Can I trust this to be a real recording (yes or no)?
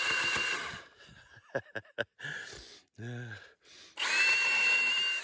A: yes